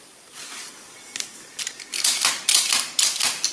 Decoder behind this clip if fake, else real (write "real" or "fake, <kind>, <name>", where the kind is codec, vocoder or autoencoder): real